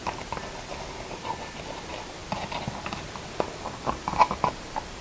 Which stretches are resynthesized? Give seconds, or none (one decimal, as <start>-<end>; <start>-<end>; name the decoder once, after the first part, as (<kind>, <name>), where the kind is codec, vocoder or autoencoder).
none